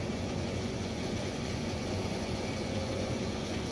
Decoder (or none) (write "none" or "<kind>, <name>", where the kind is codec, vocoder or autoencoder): vocoder, Vocos